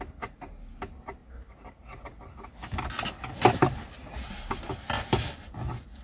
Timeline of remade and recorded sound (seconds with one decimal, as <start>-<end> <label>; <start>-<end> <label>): 0.0-6.0 recorded